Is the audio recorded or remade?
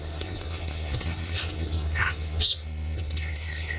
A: remade